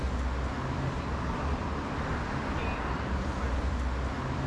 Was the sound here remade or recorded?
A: recorded